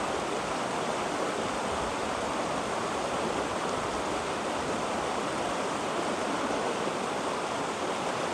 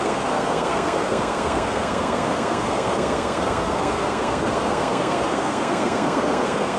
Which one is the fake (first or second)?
second